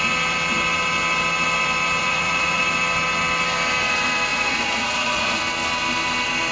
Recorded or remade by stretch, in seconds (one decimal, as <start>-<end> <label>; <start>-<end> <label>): 0.0-2.0 recorded; 2.0-2.6 remade; 2.6-4.3 recorded; 4.3-5.4 remade; 5.4-6.5 recorded